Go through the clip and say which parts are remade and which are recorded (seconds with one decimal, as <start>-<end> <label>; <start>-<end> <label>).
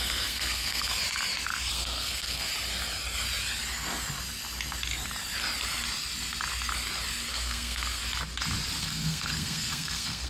0.0-1.0 remade; 1.0-1.7 recorded; 1.7-2.5 remade; 2.5-7.3 recorded; 7.3-8.0 remade; 8.0-8.8 recorded; 8.8-10.3 remade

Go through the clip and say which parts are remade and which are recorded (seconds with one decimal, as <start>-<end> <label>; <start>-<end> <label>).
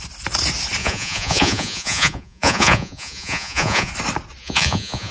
0.0-0.8 recorded; 0.8-3.9 remade; 3.9-4.4 recorded; 4.4-5.1 remade